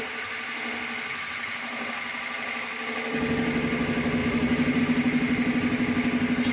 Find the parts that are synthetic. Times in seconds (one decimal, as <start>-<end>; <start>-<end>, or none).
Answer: 4.2-4.8